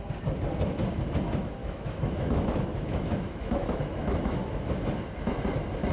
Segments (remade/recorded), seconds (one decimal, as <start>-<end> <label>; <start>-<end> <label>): 0.0-1.6 recorded; 1.6-4.7 remade; 4.7-5.9 recorded